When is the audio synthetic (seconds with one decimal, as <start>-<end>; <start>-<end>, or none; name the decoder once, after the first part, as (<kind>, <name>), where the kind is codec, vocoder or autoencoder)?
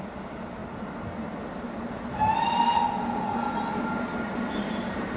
none